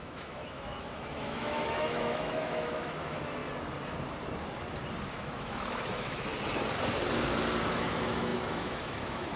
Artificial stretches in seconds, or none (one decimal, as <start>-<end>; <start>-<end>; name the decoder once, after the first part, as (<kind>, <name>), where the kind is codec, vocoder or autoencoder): 0.0-3.4 (autoencoder, DAC-VAE); 5.1-6.3; 7.7-9.4